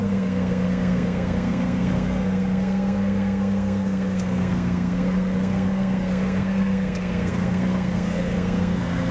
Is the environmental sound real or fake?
fake